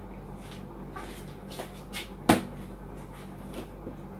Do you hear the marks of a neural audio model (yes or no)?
no